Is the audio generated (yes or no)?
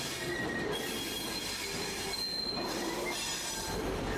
no